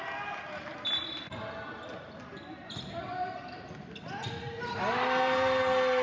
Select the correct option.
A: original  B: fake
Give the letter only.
A